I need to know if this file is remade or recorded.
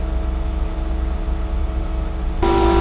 recorded